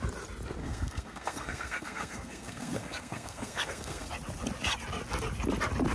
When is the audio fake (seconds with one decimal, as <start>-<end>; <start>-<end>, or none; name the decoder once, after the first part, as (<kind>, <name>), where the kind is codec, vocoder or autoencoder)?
0.6-4.1 (codec, SNAC)